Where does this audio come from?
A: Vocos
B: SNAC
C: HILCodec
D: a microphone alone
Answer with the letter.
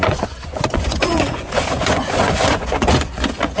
A